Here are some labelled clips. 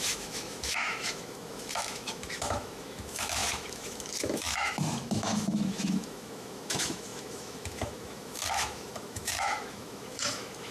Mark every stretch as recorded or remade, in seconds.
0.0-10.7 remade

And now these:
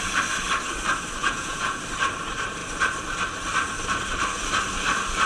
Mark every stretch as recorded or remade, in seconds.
0.0-1.2 recorded; 1.2-1.8 remade; 1.8-5.3 recorded

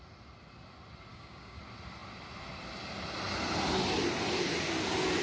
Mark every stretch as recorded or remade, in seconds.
0.0-1.1 recorded; 1.1-1.6 remade; 1.6-5.2 recorded

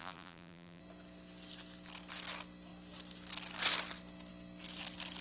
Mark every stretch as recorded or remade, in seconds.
0.0-0.8 remade; 0.8-5.2 recorded

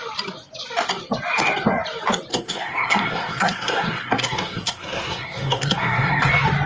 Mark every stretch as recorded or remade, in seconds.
0.0-2.3 recorded; 2.3-6.3 remade; 6.3-6.7 recorded

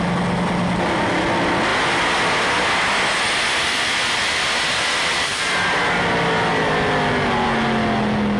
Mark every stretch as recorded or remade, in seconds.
0.0-8.4 recorded

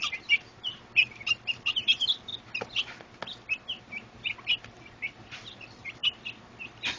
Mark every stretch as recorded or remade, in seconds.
0.0-2.3 remade; 2.3-3.8 recorded; 3.8-6.0 remade; 6.0-7.0 recorded